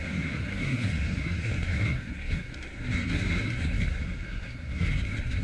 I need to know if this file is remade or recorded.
remade